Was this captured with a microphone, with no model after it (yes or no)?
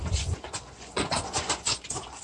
no